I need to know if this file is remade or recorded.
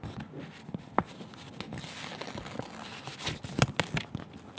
recorded